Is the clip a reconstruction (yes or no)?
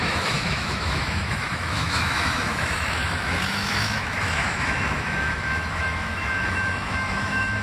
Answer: yes